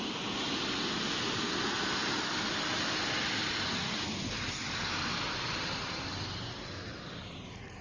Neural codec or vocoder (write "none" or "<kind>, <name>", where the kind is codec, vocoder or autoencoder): none